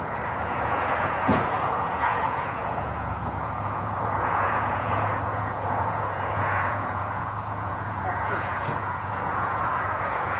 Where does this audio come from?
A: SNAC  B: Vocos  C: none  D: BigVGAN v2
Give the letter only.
B